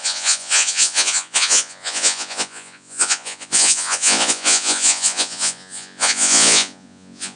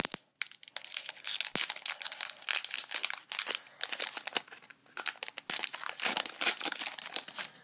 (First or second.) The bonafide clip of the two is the second